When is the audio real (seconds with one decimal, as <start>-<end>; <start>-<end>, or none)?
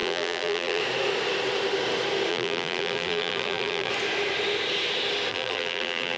0.8-2.3; 3.9-5.3